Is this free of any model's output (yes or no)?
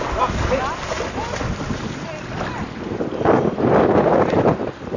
yes